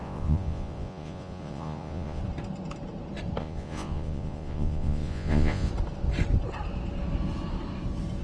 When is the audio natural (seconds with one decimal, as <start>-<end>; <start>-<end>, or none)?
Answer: 2.2-3.4; 5.7-8.2